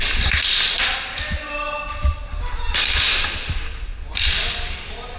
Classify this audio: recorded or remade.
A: recorded